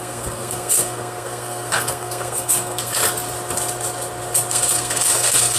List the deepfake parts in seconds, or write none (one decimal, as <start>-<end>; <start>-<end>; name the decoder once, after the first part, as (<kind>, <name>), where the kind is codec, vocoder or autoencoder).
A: 0.0-3.0 (codec, SNAC); 4.5-5.6